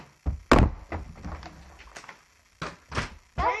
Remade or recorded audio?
recorded